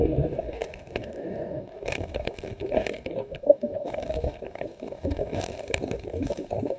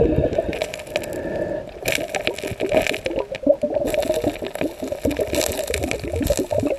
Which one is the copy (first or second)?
first